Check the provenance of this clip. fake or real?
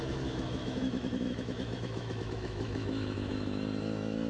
fake